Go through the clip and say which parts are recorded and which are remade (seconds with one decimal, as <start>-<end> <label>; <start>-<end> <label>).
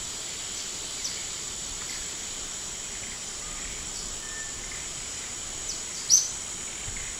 0.0-1.0 recorded; 1.0-5.3 remade; 5.3-7.2 recorded